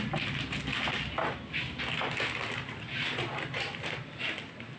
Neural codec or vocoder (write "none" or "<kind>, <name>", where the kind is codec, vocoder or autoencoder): none